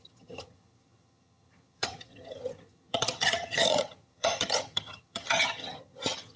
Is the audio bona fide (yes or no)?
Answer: no